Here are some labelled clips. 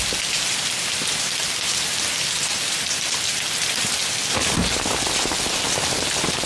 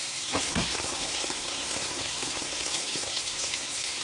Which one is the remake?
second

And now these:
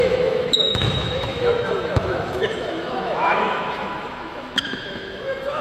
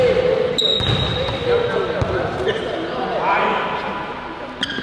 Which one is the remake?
first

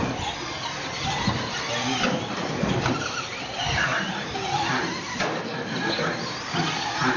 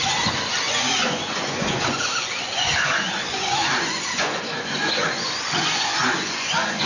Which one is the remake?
second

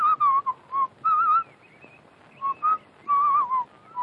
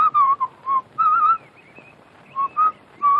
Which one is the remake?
second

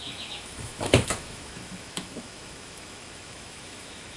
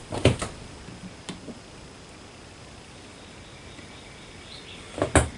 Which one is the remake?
first